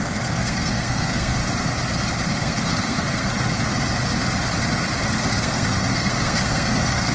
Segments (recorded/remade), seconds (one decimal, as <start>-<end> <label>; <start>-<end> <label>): 0.0-1.4 remade; 1.4-2.3 recorded; 2.3-3.3 remade; 3.3-5.3 recorded; 5.3-7.1 remade